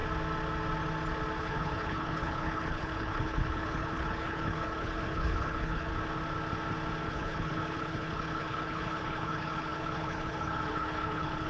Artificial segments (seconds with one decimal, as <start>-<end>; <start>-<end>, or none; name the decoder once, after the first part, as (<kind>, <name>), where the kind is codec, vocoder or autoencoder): 1.4-5.9 (codec, HILCodec); 7.1-11.5